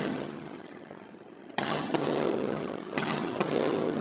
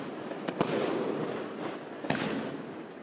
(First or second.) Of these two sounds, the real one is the second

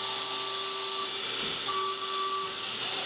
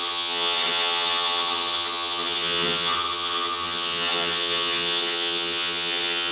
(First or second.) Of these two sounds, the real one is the first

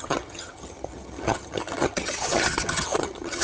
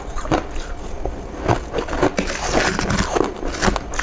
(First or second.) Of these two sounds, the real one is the second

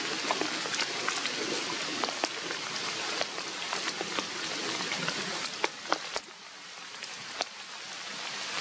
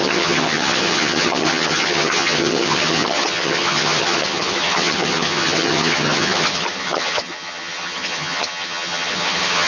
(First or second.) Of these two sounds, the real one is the first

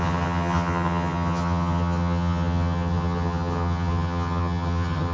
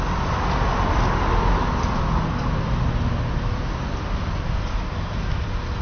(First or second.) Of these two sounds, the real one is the second